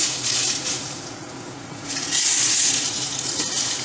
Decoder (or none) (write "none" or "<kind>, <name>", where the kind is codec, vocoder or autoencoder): vocoder, Vocos